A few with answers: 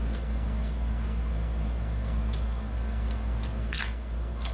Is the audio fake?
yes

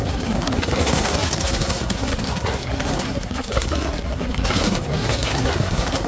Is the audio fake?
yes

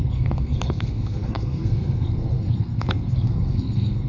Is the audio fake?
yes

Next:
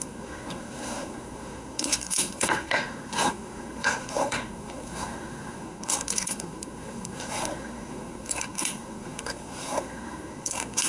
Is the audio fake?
yes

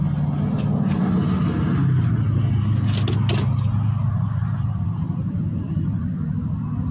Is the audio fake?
no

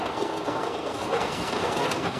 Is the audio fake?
yes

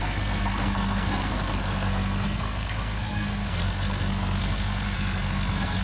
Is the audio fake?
yes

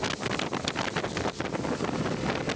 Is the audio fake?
no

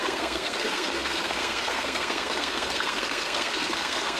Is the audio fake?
yes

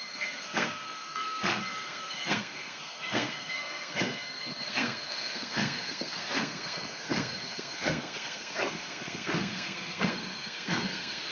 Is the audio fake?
yes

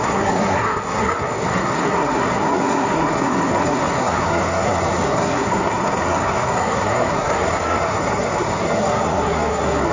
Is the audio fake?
yes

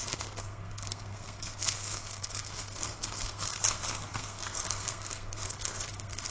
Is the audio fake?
yes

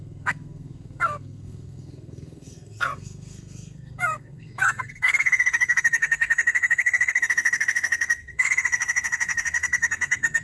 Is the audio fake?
yes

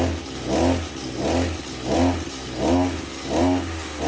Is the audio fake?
no